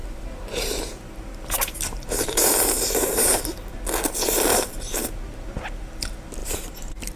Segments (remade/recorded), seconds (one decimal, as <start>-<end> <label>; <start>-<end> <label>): 0.0-3.4 remade; 3.4-4.5 recorded; 4.5-5.1 remade; 5.1-6.4 recorded; 6.4-7.2 remade